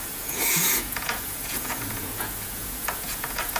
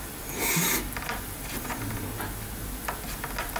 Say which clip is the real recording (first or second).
second